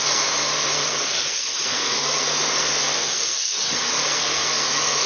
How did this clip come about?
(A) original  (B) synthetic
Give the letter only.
B